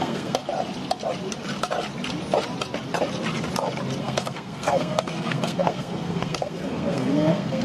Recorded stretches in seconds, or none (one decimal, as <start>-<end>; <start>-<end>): 0.4-4.0